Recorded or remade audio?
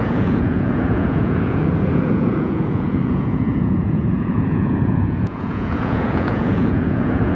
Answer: remade